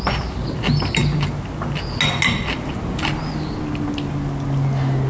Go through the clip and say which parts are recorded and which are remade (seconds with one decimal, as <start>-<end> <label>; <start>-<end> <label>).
0.0-5.1 recorded